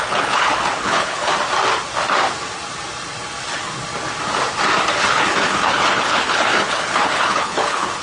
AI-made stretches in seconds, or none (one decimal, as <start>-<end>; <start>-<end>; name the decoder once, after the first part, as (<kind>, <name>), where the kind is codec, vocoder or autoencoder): 0.0-1.3 (codec, HILCodec); 5.0-8.0